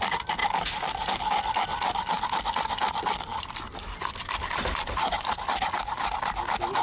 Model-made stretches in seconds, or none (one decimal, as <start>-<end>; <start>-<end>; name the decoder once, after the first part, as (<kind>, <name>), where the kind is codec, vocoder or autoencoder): 0.4-1.3 (vocoder, BigVGAN v2)